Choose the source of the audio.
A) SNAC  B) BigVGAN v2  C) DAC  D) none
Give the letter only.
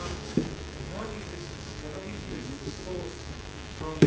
C